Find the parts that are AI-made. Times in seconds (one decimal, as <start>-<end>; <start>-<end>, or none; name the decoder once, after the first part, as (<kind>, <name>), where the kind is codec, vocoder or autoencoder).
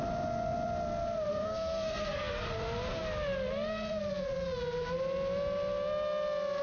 1.3-2.3 (codec, SNAC)